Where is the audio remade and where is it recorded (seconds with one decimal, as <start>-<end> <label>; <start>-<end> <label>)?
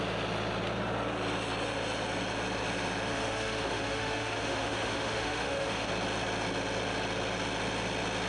0.0-3.1 recorded; 3.1-5.9 remade; 5.9-8.3 recorded